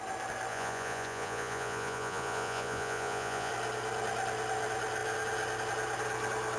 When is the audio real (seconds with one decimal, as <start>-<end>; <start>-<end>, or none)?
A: 0.0-0.5; 3.5-6.6